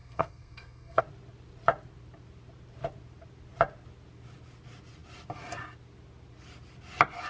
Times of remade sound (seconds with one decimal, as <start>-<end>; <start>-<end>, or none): 0.0-1.0